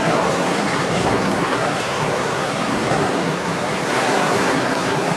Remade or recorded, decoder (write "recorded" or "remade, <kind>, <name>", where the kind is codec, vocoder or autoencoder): remade, codec, SNAC